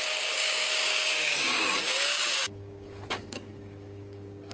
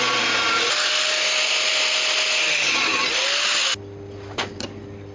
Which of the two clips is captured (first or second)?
second